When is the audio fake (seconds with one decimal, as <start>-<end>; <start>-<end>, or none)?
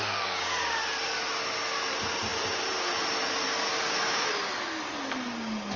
0.0-0.7; 3.7-4.3